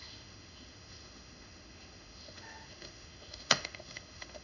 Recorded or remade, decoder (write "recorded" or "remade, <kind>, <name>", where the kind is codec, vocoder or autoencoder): remade, autoencoder, DAC-VAE